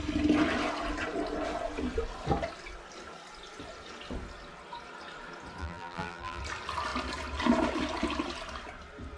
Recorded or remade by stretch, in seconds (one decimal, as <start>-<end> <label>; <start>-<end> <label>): 0.0-5.6 recorded; 5.6-6.4 remade; 6.4-9.2 recorded